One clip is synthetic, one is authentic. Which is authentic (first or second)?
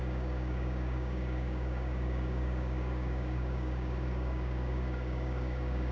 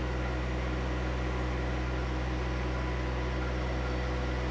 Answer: second